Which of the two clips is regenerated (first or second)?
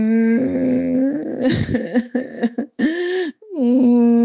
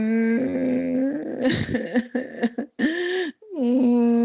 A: first